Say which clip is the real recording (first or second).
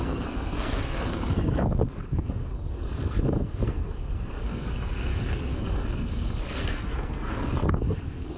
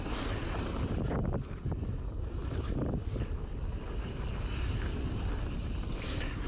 second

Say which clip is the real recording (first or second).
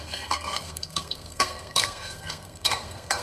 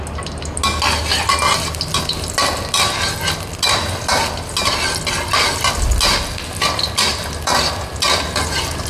second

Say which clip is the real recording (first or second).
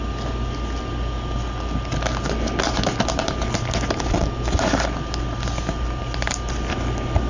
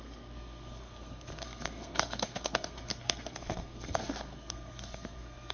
first